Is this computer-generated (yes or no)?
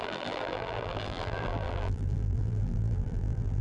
yes